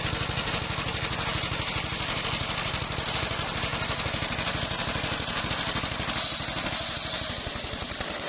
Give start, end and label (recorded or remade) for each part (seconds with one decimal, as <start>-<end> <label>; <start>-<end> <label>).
0.0-8.3 recorded